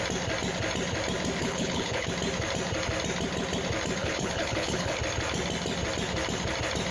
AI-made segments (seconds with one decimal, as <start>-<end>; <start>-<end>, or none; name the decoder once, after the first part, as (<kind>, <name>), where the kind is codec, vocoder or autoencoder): 1.4-2.1 (codec, HILCodec); 4.0-5.0